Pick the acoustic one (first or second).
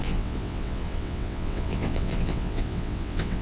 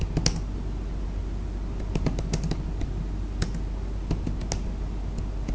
second